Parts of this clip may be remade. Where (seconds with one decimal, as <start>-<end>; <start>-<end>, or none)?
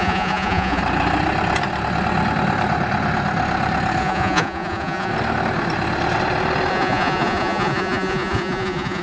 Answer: 0.0-0.8; 4.0-5.1; 6.7-9.0